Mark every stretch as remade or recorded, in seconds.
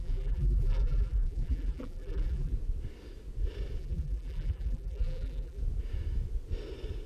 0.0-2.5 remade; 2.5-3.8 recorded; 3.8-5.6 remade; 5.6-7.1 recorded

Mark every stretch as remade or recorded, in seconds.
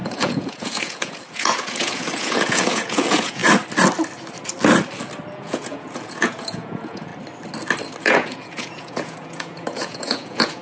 0.0-3.4 remade; 3.4-5.3 recorded; 5.3-7.1 remade; 7.1-8.0 recorded; 8.0-10.6 remade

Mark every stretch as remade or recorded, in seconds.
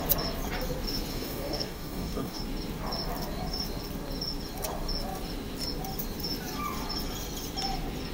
0.0-1.1 recorded; 1.1-2.4 remade; 2.4-8.1 recorded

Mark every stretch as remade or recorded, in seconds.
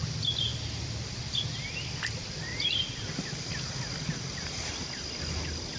0.0-5.8 recorded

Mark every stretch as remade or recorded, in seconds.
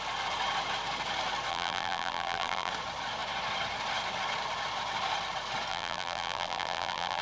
0.0-1.5 recorded; 1.5-2.7 remade; 2.7-5.7 recorded; 5.7-7.2 remade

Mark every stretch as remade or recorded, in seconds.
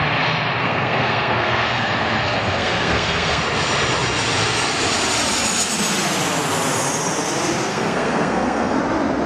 0.0-0.6 recorded; 0.6-3.4 remade; 3.4-7.7 recorded; 7.7-8.8 remade; 8.8-9.3 recorded